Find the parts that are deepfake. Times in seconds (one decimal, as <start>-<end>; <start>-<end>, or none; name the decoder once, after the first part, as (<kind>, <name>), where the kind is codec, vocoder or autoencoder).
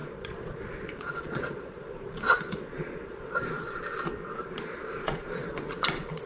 0.0-3.8 (vocoder, Vocos); 4.4-6.3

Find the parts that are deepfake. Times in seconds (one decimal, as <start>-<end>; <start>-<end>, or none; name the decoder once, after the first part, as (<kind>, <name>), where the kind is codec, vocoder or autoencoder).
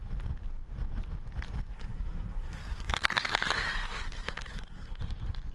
1.7-5.0 (codec, SNAC)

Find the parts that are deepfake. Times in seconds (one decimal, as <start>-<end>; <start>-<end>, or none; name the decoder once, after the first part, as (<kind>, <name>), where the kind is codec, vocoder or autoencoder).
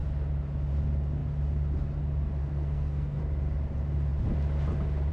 2.4-3.2 (codec, SNAC)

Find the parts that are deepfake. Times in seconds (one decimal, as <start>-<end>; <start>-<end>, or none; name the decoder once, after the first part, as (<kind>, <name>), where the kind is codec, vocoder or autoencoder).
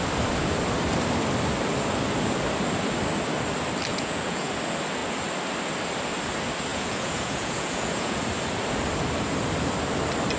3.9-4.5 (vocoder, Vocos); 6.7-8.2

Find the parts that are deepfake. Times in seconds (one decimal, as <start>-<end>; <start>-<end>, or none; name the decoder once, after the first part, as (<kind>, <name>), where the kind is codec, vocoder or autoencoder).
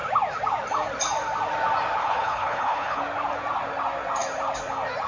2.0-3.0 (codec, HILCodec)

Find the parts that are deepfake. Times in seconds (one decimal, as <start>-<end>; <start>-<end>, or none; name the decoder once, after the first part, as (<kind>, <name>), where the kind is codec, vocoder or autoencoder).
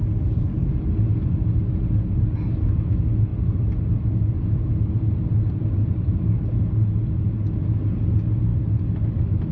none